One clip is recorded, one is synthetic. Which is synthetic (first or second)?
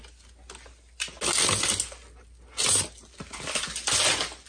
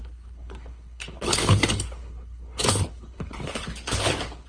second